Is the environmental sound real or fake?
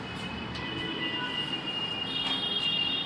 real